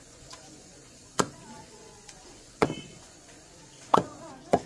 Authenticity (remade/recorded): remade